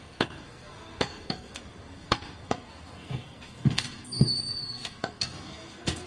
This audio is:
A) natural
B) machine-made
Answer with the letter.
B